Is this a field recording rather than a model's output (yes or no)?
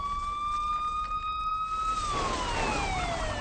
yes